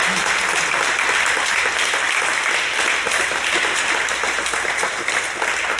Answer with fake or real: real